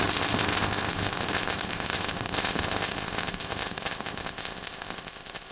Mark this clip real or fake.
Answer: fake